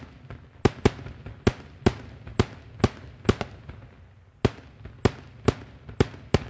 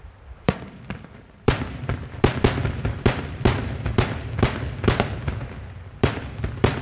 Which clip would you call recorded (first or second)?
first